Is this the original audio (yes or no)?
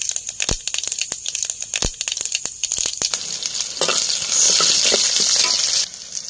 yes